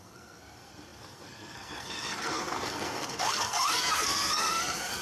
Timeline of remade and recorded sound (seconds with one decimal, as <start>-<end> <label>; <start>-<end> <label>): 0.0-5.0 remade